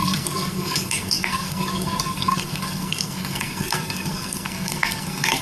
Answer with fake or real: fake